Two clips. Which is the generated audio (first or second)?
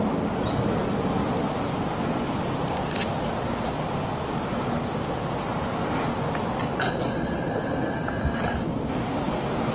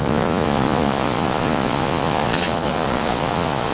second